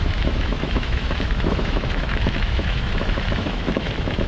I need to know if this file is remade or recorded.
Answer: remade